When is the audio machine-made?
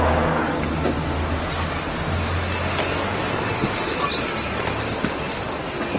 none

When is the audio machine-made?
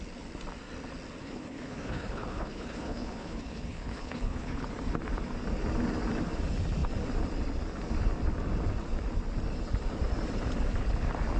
1.2-4.7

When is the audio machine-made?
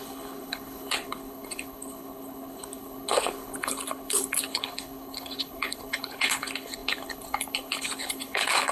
0.0-8.7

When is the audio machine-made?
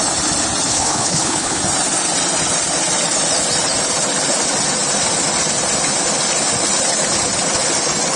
0.7-1.6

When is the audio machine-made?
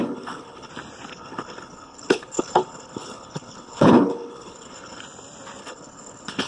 0.0-0.7; 1.1-5.0; 5.6-6.5